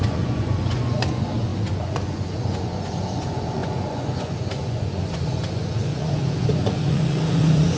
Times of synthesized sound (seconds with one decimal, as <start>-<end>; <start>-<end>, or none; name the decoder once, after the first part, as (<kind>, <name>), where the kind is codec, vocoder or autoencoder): 0.0-7.8 (vocoder, Vocos)